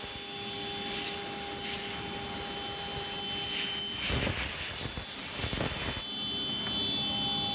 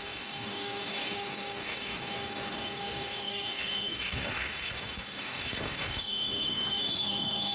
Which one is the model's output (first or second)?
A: second